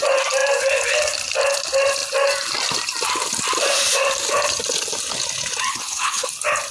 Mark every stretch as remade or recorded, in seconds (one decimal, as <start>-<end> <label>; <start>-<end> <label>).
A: 0.0-5.7 recorded; 5.7-6.3 remade; 6.3-6.7 recorded